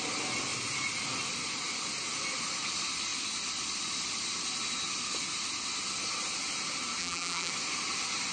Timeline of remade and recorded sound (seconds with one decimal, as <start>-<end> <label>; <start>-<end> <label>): 0.0-7.0 recorded; 7.0-7.5 remade; 7.5-8.3 recorded